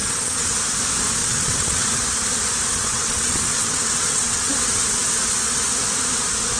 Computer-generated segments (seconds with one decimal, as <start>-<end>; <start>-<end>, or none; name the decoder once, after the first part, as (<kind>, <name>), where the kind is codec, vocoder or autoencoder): 0.0-0.5 (vocoder, WaveNeXt); 1.2-2.0; 2.7-4.5